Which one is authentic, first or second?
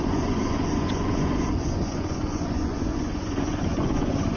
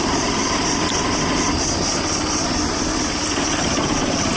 second